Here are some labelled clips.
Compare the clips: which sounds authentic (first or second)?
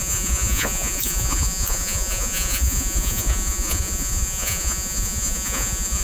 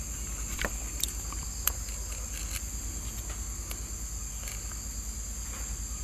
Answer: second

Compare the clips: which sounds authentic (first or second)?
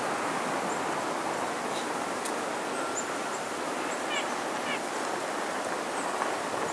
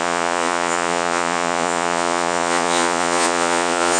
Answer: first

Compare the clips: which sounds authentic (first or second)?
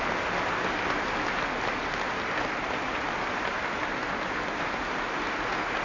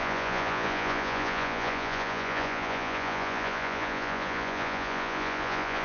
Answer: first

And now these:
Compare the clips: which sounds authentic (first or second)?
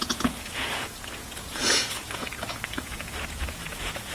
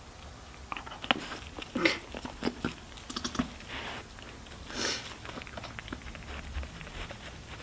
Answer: second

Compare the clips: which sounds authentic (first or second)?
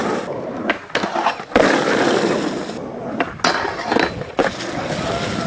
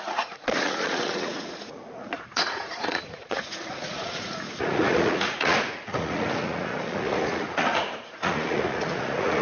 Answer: first